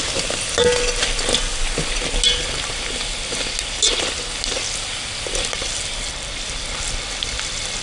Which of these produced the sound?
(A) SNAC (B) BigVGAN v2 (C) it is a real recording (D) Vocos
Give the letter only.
C